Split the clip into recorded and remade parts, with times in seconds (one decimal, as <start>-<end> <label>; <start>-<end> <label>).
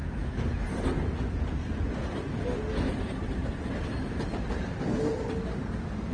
0.0-6.1 recorded